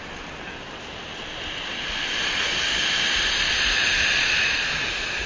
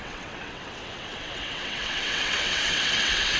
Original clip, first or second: first